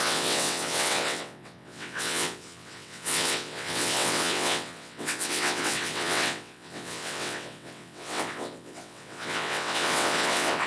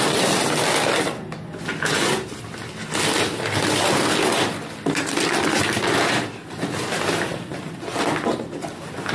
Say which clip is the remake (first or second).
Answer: first